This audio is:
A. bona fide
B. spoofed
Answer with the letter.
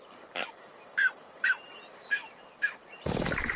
B